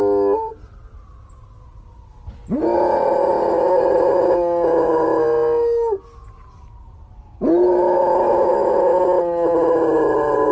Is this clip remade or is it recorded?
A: recorded